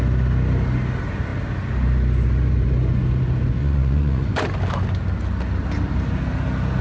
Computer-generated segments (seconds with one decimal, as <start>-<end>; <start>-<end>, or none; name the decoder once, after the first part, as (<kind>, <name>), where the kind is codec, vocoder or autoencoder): 3.6-4.4 (vocoder, Vocos)